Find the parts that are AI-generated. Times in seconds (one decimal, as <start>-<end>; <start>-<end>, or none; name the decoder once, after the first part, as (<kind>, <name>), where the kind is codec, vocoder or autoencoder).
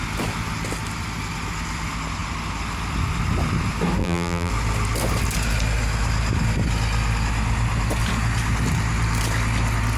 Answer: 4.0-4.5 (vocoder, BigVGAN v2)